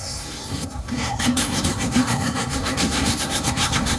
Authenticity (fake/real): fake